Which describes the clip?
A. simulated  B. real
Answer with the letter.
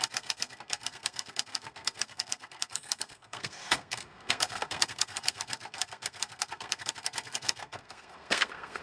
A